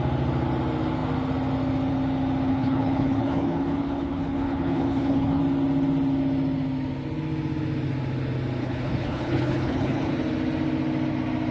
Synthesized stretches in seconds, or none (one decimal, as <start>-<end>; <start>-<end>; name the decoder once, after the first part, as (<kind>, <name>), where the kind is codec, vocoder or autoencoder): 2.5-5.4 (codec, HILCodec); 8.6-10.1